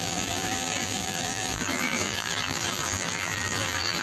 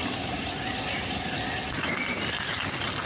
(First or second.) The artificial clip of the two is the first